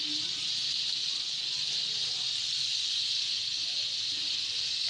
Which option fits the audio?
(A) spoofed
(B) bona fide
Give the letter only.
B